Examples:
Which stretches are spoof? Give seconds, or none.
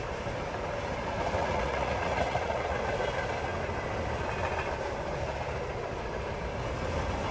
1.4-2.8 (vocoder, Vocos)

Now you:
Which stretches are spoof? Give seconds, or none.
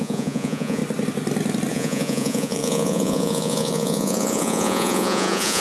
0.0-0.8 (vocoder, Vocos); 1.7-5.6